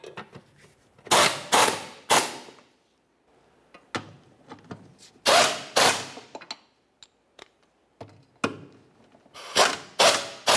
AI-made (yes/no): no